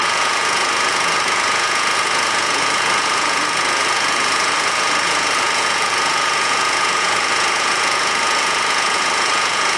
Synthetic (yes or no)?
yes